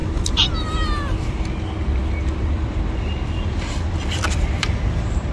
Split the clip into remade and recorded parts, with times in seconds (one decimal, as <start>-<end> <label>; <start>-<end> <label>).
0.0-0.6 remade; 0.6-5.3 recorded